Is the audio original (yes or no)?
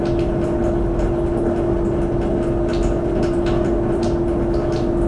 yes